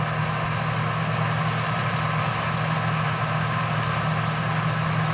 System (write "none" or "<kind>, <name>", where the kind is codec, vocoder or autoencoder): none